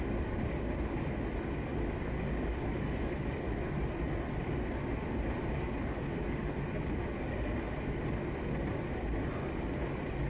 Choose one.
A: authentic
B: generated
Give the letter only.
A